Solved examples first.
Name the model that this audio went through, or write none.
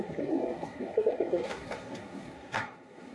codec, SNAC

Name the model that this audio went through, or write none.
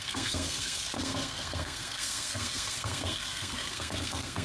codec, SNAC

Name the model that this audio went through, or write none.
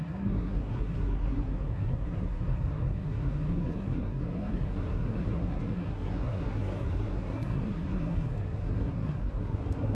codec, SNAC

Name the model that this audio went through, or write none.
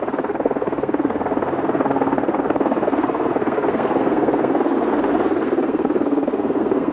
codec, SNAC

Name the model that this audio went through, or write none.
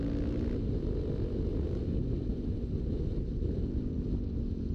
none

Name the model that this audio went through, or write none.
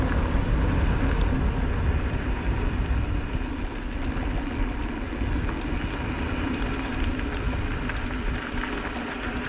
none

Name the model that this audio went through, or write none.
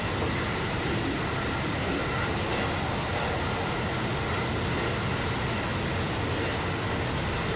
none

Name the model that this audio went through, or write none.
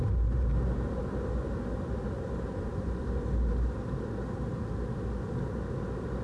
none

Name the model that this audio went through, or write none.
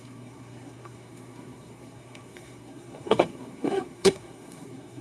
codec, SNAC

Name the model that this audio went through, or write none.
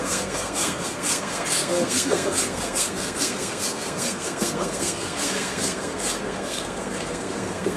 codec, SNAC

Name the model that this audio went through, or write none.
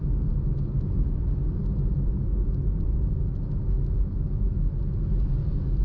none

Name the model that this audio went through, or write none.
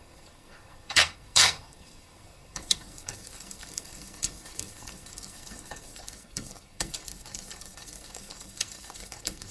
codec, SNAC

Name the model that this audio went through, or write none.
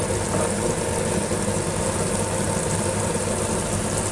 none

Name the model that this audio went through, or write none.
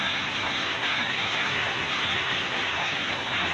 codec, SNAC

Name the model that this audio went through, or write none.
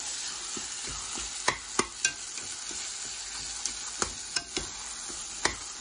none